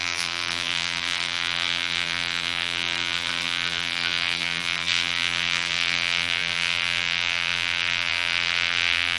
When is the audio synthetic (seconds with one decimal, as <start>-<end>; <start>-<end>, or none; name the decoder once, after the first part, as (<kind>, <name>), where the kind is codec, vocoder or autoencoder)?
0.0-9.2 (vocoder, BigVGAN v2)